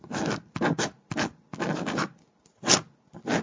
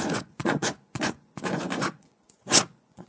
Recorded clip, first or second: first